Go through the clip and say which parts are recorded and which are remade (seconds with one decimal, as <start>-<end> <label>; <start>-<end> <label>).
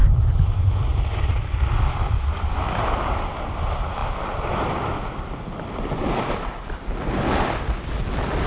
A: 0.0-8.5 recorded